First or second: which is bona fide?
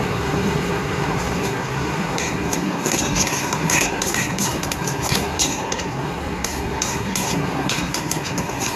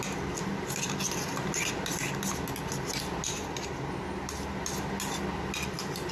second